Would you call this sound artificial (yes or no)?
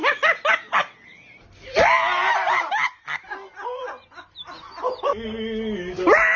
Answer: no